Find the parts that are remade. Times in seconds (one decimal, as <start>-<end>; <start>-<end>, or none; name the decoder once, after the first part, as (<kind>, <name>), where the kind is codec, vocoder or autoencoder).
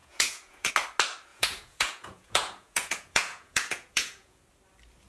0.0-0.7 (vocoder, Vocos); 1.3-4.4